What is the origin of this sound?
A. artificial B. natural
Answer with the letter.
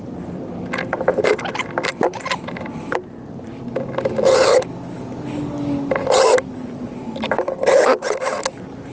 B